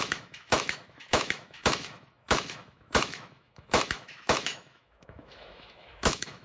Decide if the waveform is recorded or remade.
remade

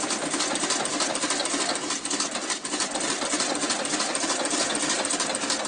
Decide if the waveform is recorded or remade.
recorded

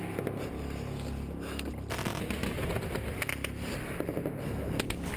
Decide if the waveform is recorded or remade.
recorded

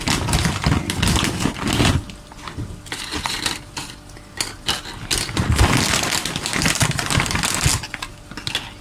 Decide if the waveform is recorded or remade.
recorded